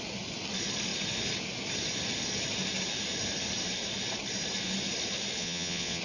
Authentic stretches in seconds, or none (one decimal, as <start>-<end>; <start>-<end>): 0.0-5.4